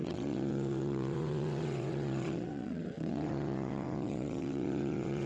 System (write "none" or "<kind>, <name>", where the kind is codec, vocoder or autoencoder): vocoder, WaveNeXt